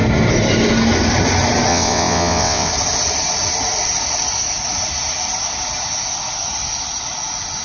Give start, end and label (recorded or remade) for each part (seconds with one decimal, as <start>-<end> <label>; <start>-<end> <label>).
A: 0.0-1.7 recorded; 1.7-2.7 remade; 2.7-7.6 recorded